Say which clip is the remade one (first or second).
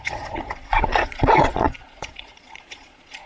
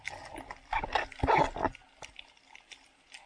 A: first